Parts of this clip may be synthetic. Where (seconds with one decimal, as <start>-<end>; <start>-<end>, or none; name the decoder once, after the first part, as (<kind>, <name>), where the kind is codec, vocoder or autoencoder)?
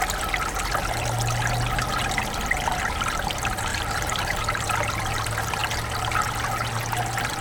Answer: 3.7-4.4 (vocoder, BigVGAN v2)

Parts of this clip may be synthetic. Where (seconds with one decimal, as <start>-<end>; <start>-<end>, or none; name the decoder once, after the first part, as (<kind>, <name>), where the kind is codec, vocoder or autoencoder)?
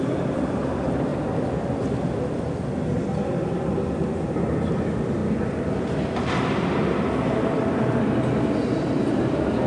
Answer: 5.2-7.9 (vocoder, BigVGAN v2)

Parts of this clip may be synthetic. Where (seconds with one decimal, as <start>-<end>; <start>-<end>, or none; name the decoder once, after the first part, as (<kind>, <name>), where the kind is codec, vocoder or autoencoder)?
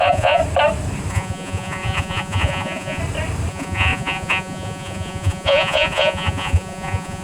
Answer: 0.0-0.4 (vocoder, Vocos); 1.1-3.0; 3.5-7.2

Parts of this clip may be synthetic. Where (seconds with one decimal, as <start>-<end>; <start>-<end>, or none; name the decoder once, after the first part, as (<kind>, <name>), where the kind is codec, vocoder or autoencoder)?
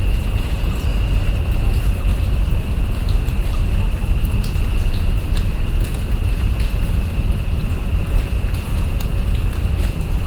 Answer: 0.0-0.9 (vocoder, Vocos); 1.4-2.1; 4.2-10.3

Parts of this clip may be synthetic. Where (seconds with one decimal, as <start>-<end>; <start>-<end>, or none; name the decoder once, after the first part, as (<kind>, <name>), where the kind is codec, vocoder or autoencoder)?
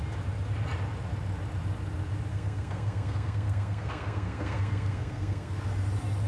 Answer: 2.3-5.6 (codec, SNAC)